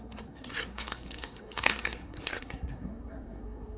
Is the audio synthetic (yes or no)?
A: yes